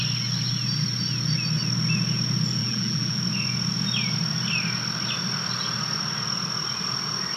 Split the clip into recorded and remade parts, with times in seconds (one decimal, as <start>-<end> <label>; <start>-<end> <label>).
0.0-2.6 recorded; 2.6-3.2 remade; 3.2-7.4 recorded